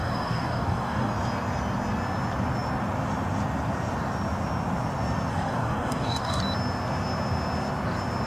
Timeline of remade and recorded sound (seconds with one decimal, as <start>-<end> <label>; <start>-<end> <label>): 0.0-1.1 remade; 1.1-5.3 recorded; 5.3-6.4 remade; 6.4-8.3 recorded